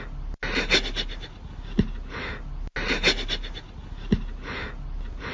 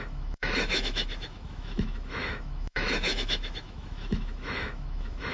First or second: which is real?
first